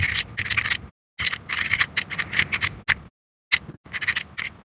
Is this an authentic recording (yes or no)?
yes